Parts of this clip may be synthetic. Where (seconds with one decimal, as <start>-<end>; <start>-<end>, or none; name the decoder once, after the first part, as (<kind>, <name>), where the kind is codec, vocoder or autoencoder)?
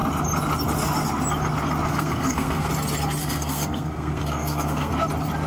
1.9-2.7 (codec, SNAC); 3.2-4.9